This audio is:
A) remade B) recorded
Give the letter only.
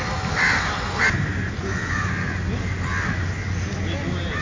B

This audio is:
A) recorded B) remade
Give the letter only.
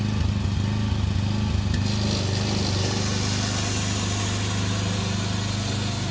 A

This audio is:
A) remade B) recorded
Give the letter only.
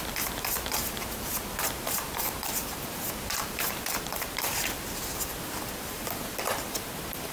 A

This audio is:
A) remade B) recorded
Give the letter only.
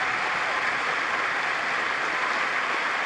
B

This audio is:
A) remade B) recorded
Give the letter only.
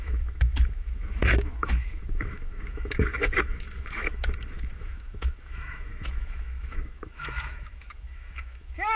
A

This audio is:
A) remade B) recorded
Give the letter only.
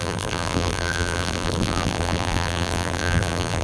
A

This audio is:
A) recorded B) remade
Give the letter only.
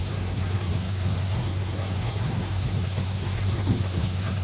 B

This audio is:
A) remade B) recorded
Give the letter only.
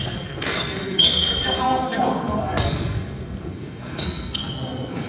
A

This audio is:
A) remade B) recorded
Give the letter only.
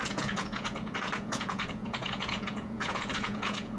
A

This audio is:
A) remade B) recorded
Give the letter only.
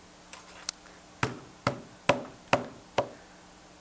B